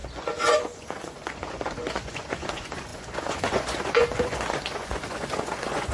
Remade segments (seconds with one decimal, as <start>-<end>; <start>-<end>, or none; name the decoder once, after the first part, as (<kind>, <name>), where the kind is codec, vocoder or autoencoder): 0.0-5.9 (vocoder, Vocos)